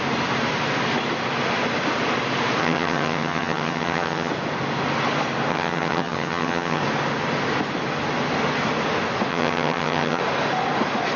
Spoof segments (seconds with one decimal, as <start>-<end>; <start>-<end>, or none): 2.6-4.3; 5.5-6.8; 9.3-10.2